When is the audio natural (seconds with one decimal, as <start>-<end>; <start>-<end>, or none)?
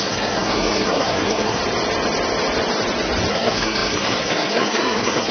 1.6-3.3